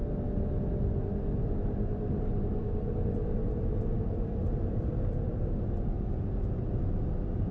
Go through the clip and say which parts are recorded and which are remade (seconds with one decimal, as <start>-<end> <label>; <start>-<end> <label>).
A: 0.0-1.9 recorded; 1.9-5.4 remade; 5.4-7.5 recorded